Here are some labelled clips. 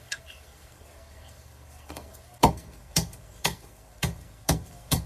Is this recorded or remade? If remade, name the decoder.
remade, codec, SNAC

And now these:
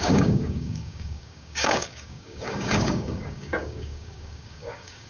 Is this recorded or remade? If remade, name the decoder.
remade, codec, DAC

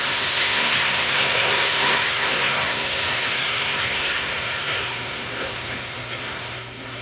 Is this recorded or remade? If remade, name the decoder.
remade, codec, SNAC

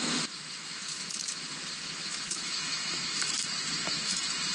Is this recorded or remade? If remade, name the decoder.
remade, autoencoder, DAC-VAE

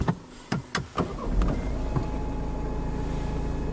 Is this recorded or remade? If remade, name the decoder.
recorded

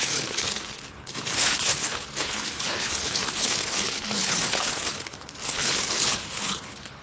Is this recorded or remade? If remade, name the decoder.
remade, codec, HILCodec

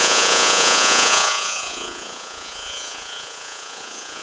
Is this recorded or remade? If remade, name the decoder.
remade, vocoder, Vocos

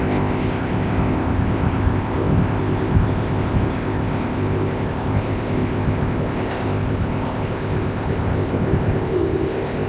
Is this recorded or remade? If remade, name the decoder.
remade, codec, ZipCodec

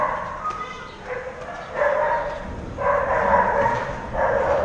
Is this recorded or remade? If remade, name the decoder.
remade, vocoder, BigVGAN v2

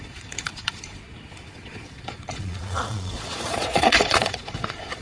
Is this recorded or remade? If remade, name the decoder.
remade, vocoder, Vocos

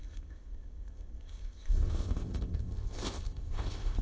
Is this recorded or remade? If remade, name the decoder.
remade, codec, ZipCodec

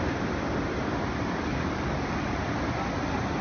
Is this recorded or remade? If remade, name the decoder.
recorded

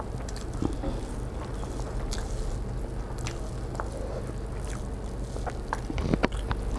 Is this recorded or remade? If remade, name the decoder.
recorded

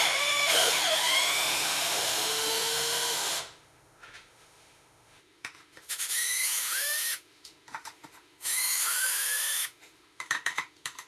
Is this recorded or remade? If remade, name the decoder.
remade, autoencoder, DAC-VAE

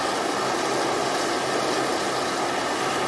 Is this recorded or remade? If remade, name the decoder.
recorded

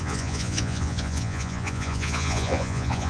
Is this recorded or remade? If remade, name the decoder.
remade, vocoder, Vocos